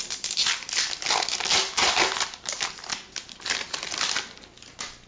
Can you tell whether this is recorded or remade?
recorded